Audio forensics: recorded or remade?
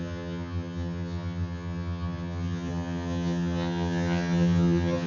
remade